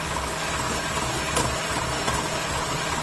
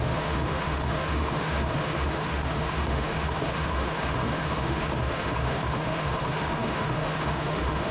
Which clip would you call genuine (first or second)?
first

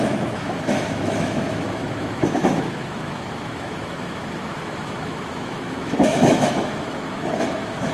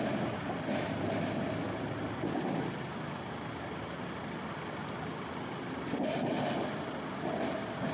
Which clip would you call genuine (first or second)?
second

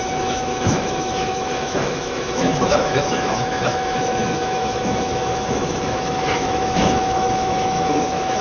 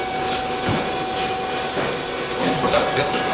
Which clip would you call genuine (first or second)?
second